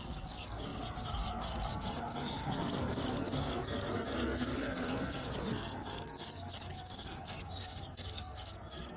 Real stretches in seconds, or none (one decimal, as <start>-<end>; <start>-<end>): none